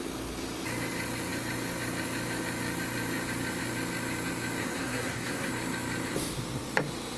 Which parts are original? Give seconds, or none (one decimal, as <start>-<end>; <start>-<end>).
0.0-4.6; 5.5-7.2